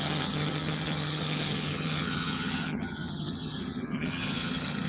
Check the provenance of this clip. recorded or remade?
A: remade